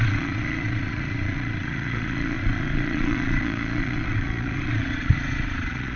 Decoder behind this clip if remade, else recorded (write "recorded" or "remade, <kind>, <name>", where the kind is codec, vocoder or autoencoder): remade, vocoder, Vocos